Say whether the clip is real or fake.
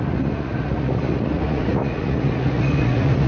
fake